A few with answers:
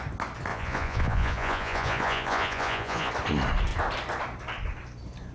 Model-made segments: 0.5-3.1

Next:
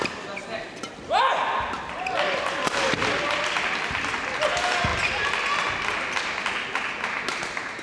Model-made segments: none

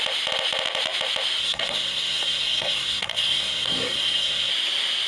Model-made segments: 1.4-4.5

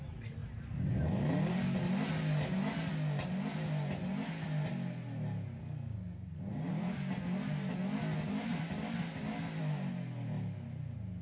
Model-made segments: 5.6-6.4

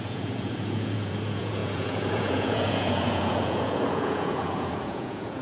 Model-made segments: 0.0-5.4

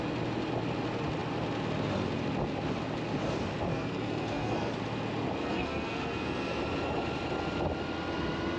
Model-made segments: 3.7-4.7; 5.4-6.6